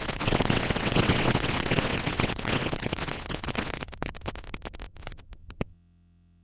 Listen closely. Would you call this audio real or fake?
fake